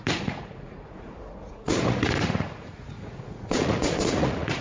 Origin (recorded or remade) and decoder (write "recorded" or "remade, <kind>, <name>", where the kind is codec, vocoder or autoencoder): remade, vocoder, Vocos